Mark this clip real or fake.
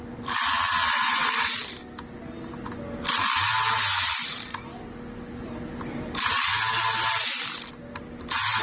real